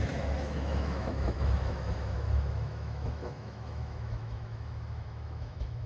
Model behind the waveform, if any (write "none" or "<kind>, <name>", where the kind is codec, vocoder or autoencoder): autoencoder, DAC-VAE